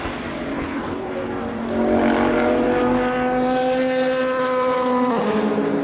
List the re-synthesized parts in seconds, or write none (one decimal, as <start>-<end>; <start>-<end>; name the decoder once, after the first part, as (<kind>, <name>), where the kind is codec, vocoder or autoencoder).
0.5-1.1 (codec, HILCodec)